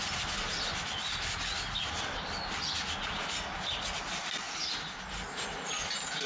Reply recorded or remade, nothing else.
recorded